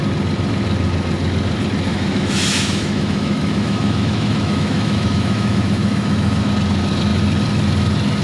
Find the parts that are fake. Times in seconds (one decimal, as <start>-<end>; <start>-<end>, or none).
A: 1.9-6.5